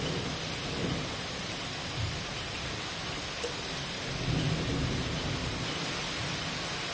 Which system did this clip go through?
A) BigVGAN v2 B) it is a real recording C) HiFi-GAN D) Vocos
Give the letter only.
B